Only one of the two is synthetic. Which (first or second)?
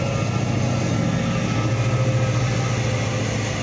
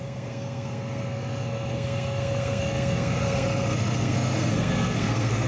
second